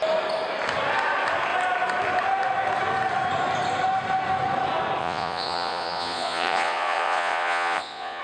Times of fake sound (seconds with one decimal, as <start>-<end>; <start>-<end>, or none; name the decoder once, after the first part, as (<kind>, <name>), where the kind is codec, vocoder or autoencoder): 5.0-8.2 (vocoder, Vocos)